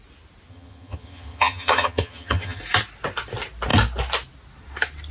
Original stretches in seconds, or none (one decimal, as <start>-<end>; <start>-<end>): 0.0-0.5; 2.6-5.1